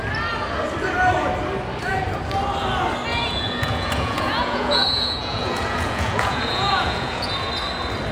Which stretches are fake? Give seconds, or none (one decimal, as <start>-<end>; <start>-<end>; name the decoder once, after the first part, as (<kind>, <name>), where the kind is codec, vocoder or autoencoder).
3.1-7.5 (vocoder, Vocos)